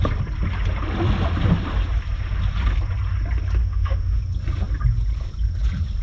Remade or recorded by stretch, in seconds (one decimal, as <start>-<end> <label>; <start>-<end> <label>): 0.0-3.6 recorded; 3.6-4.2 remade; 4.2-6.0 recorded